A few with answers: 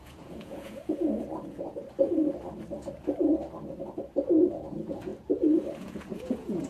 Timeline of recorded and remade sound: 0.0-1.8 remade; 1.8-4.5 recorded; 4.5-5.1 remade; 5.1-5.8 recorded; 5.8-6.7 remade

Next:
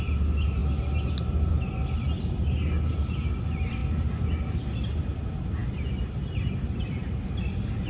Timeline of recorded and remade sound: 0.0-7.9 recorded